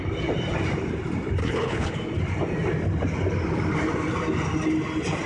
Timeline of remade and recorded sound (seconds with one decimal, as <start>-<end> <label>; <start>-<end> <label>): 0.0-1.4 recorded; 1.4-1.9 remade; 1.9-5.3 recorded